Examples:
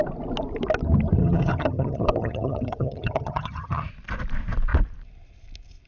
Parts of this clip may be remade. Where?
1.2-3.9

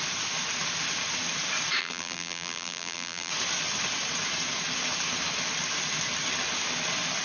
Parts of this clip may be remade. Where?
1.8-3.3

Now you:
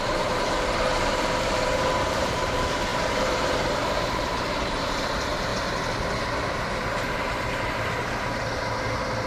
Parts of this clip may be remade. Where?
0.0-5.5

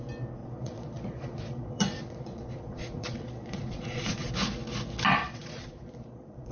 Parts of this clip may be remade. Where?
0.4-4.3; 5.2-6.5

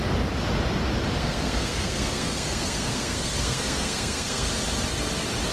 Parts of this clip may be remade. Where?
1.2-4.5

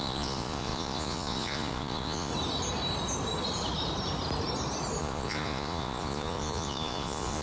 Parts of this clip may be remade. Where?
0.0-2.3; 5.0-7.4